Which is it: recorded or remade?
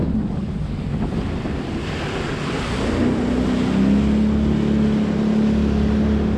recorded